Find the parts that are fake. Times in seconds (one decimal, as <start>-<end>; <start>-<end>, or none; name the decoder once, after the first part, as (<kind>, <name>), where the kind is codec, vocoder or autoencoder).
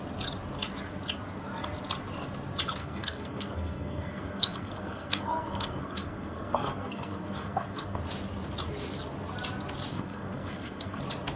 2.8-8.0 (codec, SNAC); 9.9-11.0